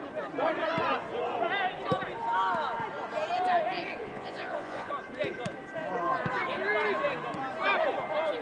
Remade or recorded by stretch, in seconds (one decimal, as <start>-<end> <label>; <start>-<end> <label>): 0.0-4.0 recorded; 4.0-4.9 remade; 4.9-8.4 recorded